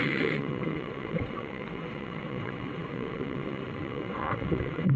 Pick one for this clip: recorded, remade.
remade